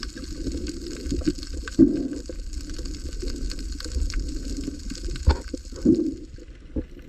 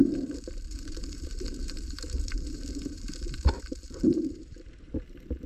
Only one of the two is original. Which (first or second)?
first